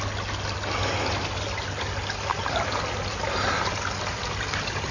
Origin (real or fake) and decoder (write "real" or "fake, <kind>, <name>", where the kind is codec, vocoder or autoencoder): real